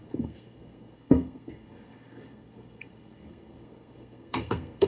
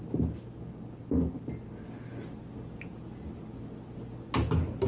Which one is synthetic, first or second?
first